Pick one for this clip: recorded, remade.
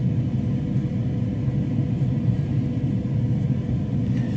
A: recorded